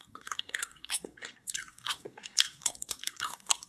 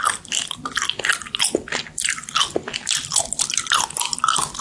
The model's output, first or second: first